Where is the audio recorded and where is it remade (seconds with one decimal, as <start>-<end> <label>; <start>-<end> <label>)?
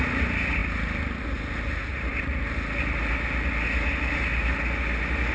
0.0-5.3 recorded